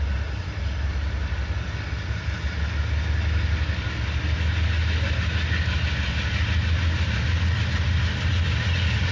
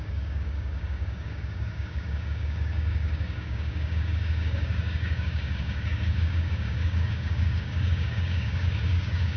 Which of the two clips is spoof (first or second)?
second